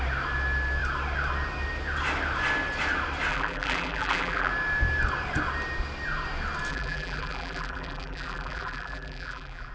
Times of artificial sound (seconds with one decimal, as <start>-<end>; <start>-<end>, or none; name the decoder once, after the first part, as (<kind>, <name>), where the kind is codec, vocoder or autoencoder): 3.3-4.5 (vocoder, BigVGAN v2); 6.7-9.7